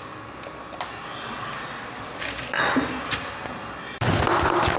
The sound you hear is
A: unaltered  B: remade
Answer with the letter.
A